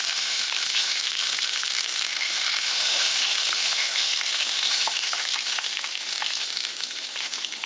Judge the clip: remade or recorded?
remade